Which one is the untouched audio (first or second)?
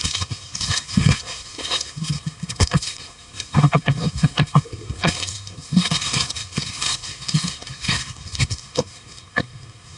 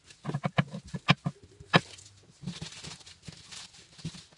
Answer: second